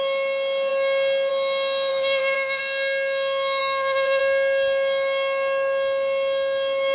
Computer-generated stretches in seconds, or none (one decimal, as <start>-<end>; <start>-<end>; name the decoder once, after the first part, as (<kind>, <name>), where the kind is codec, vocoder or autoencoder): 1.9-2.6 (vocoder, BigVGAN v2); 3.6-4.2